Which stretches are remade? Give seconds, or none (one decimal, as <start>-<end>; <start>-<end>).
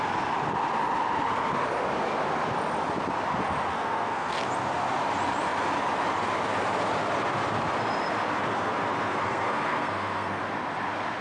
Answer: 3.7-4.4; 8.5-10.4